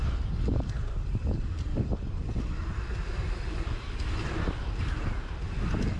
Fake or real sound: real